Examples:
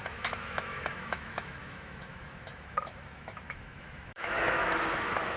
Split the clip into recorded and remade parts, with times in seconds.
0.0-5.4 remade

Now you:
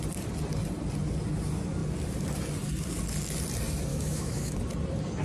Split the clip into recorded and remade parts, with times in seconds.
0.0-3.9 recorded; 3.9-4.6 remade; 4.6-5.2 recorded

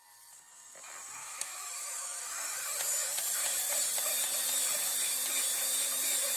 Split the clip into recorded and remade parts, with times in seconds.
0.0-1.2 recorded; 1.2-2.2 remade; 2.2-6.4 recorded

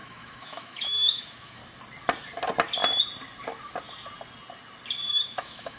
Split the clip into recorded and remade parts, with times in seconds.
0.0-1.6 remade; 1.6-5.1 recorded; 5.1-5.8 remade

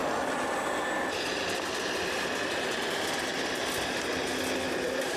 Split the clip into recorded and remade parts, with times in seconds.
0.0-5.2 recorded